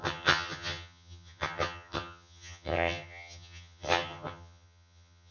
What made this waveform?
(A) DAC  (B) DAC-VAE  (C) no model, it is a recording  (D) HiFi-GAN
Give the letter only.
D